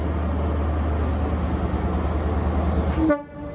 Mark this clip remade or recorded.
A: recorded